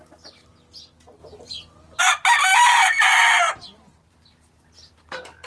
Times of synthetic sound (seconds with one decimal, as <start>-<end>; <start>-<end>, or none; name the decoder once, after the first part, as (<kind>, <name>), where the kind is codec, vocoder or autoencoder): none